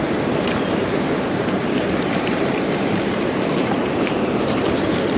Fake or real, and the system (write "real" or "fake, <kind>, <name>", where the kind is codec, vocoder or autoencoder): fake, vocoder, BigVGAN v2